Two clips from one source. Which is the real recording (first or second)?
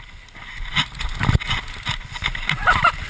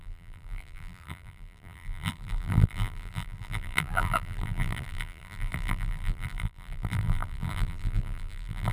first